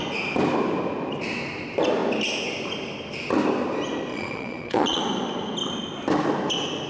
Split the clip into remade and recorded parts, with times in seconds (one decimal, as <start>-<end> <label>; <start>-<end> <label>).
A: 0.0-4.1 recorded; 4.1-5.0 remade; 5.0-6.9 recorded